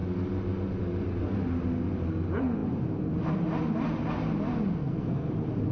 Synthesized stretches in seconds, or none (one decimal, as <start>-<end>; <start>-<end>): 4.8-5.3